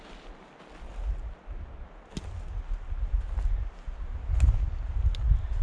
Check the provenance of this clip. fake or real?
real